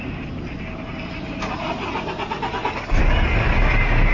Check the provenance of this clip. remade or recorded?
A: recorded